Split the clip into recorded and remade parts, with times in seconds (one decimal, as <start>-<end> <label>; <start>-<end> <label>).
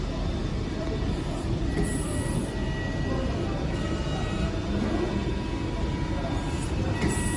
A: 0.0-0.4 recorded; 0.4-1.9 remade; 1.9-7.4 recorded